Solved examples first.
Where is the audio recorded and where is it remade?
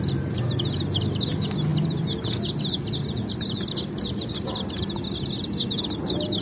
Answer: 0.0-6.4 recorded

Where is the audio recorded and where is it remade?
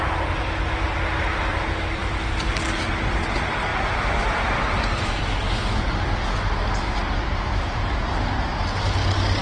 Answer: 0.0-2.0 recorded; 2.0-2.5 remade; 2.5-3.7 recorded; 3.7-8.0 remade; 8.0-9.4 recorded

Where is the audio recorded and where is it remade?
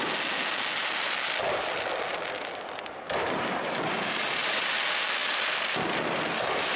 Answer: 0.0-0.8 recorded; 0.8-1.4 remade; 1.4-2.1 recorded; 2.1-4.7 remade; 4.7-5.2 recorded; 5.2-6.2 remade; 6.2-6.8 recorded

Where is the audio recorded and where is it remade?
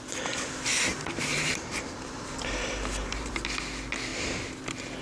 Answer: 0.0-0.9 recorded; 0.9-3.3 remade; 3.3-5.0 recorded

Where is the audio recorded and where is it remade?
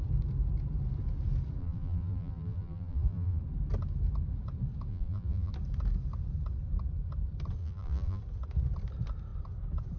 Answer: 0.0-1.6 recorded; 1.6-3.4 remade; 3.4-4.9 recorded; 4.9-5.5 remade; 5.5-7.6 recorded; 7.6-8.2 remade; 8.2-10.0 recorded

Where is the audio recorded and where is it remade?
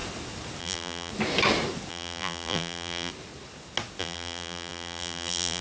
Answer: 0.0-0.6 recorded; 0.6-1.1 remade; 1.1-1.9 recorded; 1.9-3.1 remade; 3.1-4.0 recorded; 4.0-5.6 remade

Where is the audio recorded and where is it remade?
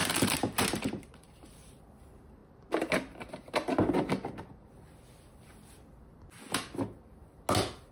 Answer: 0.0-1.7 remade; 1.7-7.9 recorded